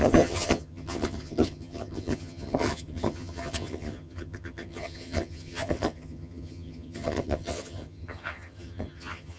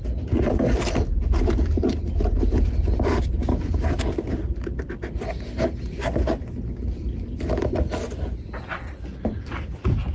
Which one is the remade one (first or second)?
first